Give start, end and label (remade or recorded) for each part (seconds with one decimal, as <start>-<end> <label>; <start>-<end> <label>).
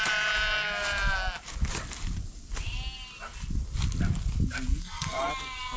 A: 0.0-4.7 recorded; 4.7-5.3 remade; 5.3-5.8 recorded